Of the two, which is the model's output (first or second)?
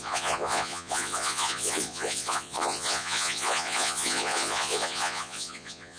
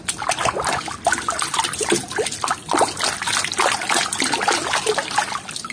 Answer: first